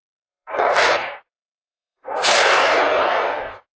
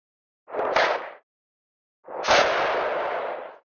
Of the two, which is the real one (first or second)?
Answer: second